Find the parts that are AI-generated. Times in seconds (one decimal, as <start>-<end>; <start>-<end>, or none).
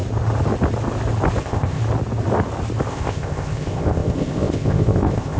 1.4-1.8; 2.9-5.4